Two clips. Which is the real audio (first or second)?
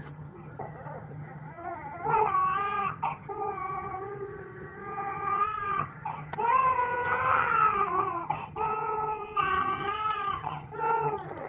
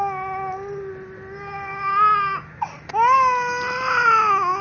second